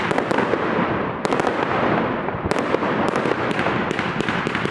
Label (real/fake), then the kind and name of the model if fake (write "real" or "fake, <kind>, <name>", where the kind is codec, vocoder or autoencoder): real